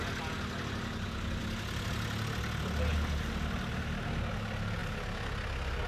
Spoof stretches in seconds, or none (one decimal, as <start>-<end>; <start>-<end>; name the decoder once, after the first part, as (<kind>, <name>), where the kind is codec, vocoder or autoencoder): none